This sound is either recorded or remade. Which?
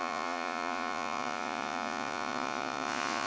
remade